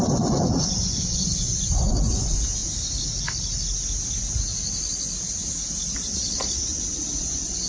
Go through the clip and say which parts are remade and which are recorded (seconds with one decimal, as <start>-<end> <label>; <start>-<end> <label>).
0.0-2.6 remade; 2.6-7.2 recorded; 7.2-7.7 remade